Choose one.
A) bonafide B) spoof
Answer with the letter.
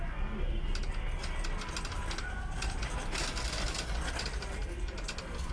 A